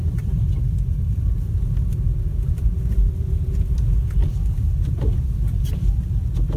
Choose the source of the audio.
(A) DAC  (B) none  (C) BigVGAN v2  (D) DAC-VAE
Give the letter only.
C